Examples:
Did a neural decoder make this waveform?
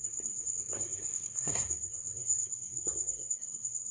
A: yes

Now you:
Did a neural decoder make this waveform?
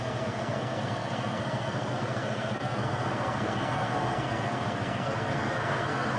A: yes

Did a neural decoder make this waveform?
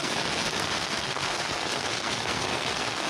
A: yes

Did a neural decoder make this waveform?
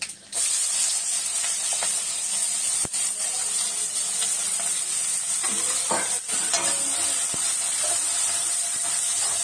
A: no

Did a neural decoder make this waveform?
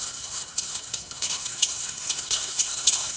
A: yes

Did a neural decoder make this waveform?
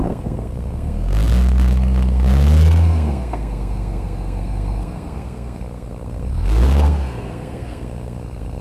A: yes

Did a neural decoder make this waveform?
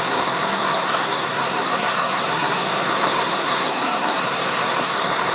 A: yes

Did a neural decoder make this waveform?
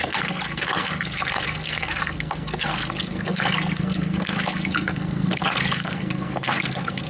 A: yes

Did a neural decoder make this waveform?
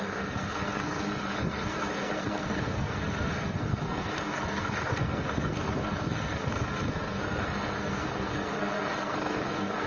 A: yes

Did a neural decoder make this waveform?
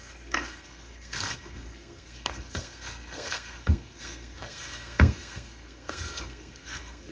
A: yes